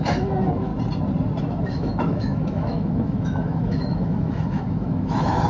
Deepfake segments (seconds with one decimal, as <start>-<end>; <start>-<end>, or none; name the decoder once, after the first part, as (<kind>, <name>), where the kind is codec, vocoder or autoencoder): 0.0-0.7 (autoencoder, DAC-VAE); 1.4-5.5